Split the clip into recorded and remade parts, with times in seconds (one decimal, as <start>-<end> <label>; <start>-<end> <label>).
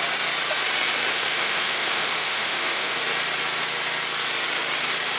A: 0.0-1.1 recorded; 1.1-3.0 remade; 3.0-5.2 recorded